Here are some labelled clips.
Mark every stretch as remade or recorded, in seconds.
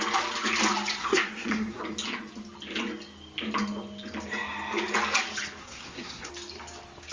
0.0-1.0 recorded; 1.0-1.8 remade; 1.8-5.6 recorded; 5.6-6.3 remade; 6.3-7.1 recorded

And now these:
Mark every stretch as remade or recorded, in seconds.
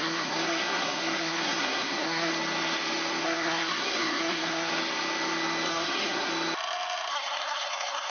0.0-2.3 remade; 2.3-3.2 recorded; 3.2-4.7 remade; 4.7-5.7 recorded; 5.7-6.3 remade; 6.3-7.1 recorded; 7.1-8.1 remade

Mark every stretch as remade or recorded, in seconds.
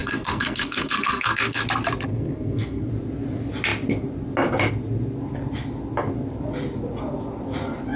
0.0-1.6 remade; 1.6-2.1 recorded; 2.1-2.9 remade; 2.9-8.0 recorded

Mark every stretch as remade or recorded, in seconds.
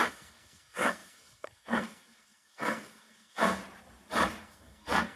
0.0-3.6 remade; 3.6-4.4 recorded; 4.4-5.2 remade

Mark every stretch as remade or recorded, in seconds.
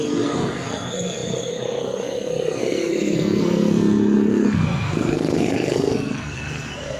0.0-7.0 remade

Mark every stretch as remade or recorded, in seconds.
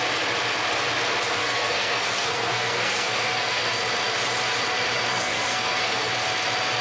0.0-1.4 recorded; 1.4-3.7 remade; 3.7-5.1 recorded; 5.1-6.1 remade; 6.1-6.8 recorded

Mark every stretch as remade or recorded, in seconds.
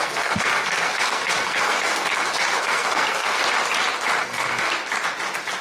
0.0-3.4 remade; 3.4-4.2 recorded; 4.2-4.7 remade; 4.7-5.6 recorded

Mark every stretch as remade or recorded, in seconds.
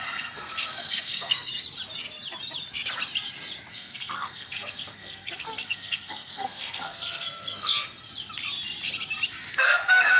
0.0-1.5 remade; 1.5-3.7 recorded; 3.7-8.1 remade; 8.1-9.5 recorded; 9.5-10.2 remade